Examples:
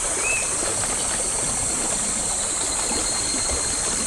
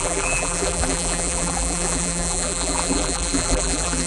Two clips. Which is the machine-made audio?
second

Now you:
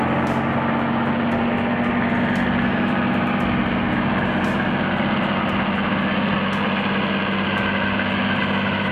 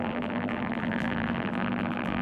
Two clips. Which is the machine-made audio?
second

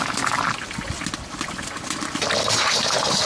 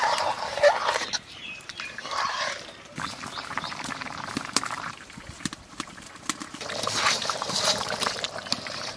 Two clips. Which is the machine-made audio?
second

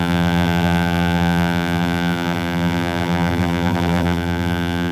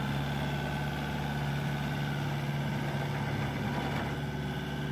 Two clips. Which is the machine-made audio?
first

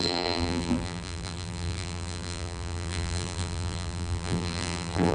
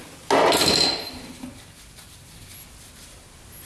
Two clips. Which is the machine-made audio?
first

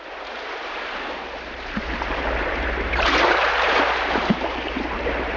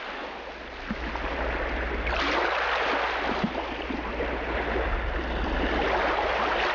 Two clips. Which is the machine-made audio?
first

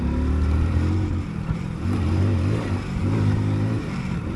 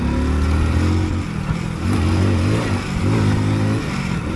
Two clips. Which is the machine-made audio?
first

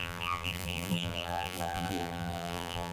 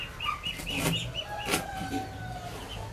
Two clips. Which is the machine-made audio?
first